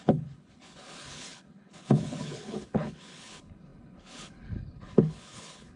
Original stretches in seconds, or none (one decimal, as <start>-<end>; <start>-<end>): none

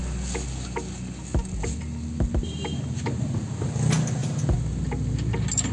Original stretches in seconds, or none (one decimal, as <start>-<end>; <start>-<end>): 0.0-5.7

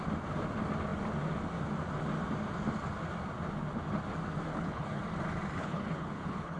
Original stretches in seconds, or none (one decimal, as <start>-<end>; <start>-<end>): 0.0-4.5; 5.0-5.6

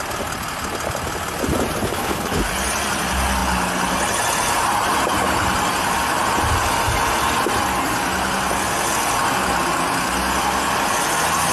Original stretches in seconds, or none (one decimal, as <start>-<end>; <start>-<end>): 0.0-1.9; 2.4-11.5

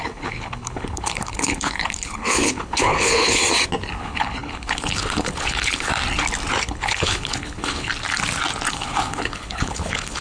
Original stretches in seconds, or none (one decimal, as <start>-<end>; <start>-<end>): 3.4-4.0; 5.9-6.6; 7.9-8.7

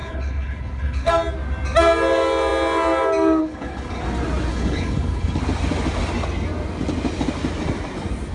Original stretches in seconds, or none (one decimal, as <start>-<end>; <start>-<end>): 1.1-3.4; 4.0-4.5; 5.4-8.3

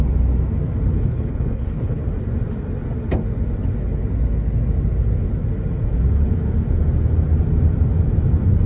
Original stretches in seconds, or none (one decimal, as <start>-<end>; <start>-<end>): 0.0-0.9; 2.0-8.7

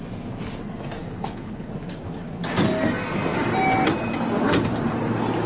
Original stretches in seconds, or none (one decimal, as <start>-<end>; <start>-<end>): 0.0-1.0; 1.7-5.5